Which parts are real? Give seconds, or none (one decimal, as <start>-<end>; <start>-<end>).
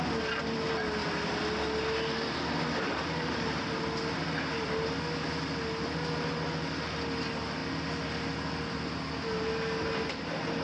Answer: 0.0-10.6